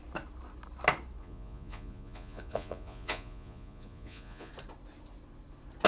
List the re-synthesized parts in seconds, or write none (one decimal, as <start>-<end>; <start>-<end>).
1.2-4.5